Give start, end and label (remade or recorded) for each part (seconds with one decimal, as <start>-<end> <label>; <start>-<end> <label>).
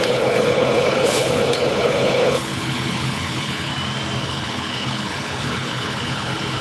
0.0-3.7 remade; 3.7-4.2 recorded; 4.2-6.6 remade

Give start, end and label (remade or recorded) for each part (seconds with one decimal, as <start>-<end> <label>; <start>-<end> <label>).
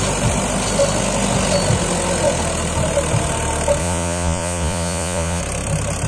0.0-3.8 recorded; 3.8-5.4 remade; 5.4-6.1 recorded